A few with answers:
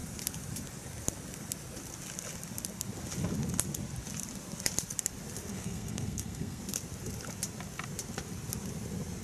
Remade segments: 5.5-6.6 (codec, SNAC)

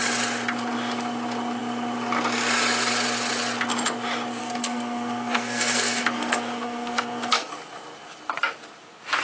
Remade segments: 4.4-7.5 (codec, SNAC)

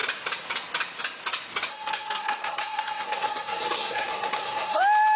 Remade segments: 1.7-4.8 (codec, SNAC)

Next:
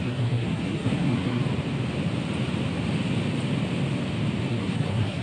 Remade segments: 0.0-1.4 (codec, SNAC); 4.5-5.2

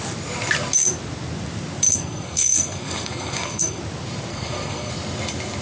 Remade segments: 1.9-3.8 (codec, SNAC); 4.3-4.9

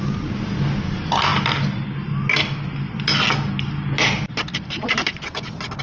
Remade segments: none

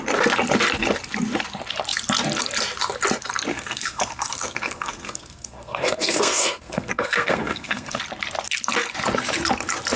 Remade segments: 3.5-8.0 (codec, SNAC)